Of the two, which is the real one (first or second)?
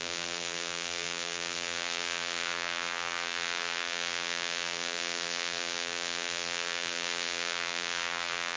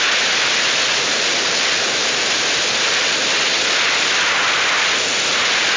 second